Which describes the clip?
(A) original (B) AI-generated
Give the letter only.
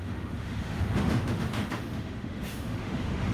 B